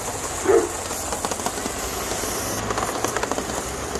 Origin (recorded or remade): recorded